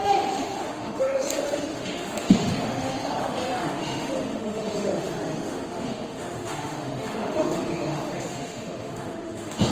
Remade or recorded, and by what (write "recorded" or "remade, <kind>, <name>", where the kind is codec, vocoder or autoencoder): remade, autoencoder, DAC-VAE